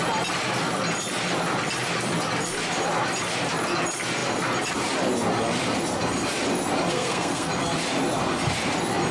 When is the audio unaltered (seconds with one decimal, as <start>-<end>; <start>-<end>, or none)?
0.0-6.9; 7.5-9.1